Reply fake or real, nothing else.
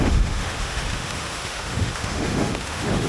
fake